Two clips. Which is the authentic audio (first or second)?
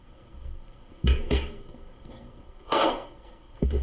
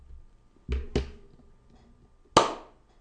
second